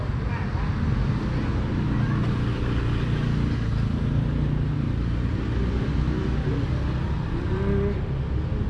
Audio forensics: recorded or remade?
recorded